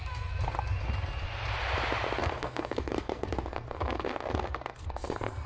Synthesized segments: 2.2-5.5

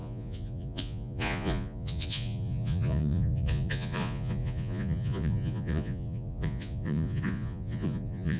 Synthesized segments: 0.0-8.4

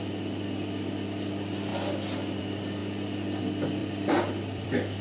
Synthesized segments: 1.7-2.4; 2.8-3.4; 3.8-5.0

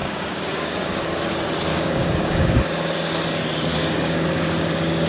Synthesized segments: 0.0-0.9; 1.7-2.5; 3.7-5.1

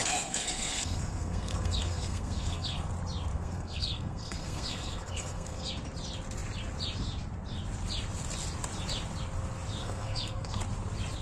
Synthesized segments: 0.0-2.9; 3.3-5.7; 9.8-10.6

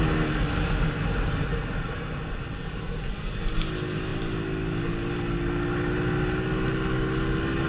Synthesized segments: none

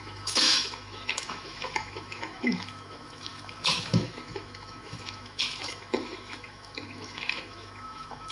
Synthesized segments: 0.0-8.3

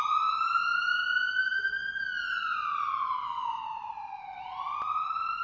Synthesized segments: none